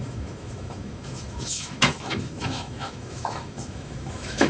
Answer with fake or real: fake